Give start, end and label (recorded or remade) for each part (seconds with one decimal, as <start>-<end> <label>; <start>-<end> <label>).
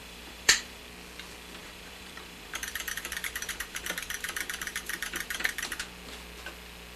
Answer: 0.0-0.8 remade; 0.8-1.6 recorded; 1.6-5.8 remade; 5.8-7.0 recorded